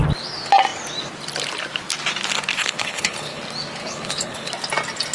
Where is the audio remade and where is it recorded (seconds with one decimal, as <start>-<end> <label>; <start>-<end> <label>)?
0.0-2.6 recorded; 2.6-3.4 remade; 3.4-3.8 recorded; 3.8-4.5 remade; 4.5-5.1 recorded